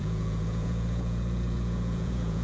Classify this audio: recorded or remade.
remade